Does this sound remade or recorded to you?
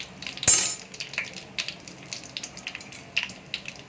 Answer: recorded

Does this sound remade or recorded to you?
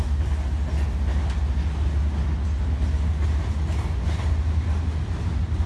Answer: recorded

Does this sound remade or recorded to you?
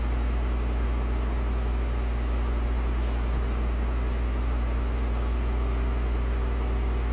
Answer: recorded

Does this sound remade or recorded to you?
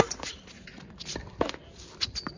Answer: recorded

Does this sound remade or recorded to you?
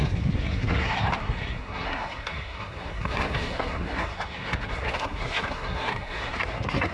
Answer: remade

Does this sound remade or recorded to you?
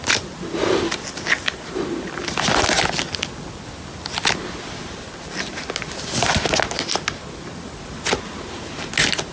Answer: recorded